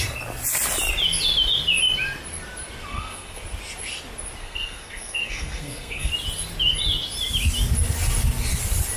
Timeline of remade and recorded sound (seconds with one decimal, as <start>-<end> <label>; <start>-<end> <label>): 0.0-2.9 recorded; 2.9-3.4 remade; 3.4-4.4 recorded; 4.4-6.1 remade; 6.1-9.0 recorded